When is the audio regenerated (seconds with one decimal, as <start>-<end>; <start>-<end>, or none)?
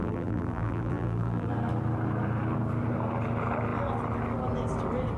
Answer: 0.0-1.5